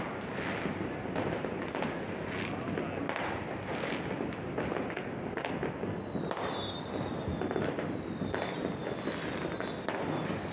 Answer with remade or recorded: recorded